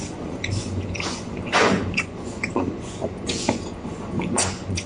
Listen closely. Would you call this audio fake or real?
fake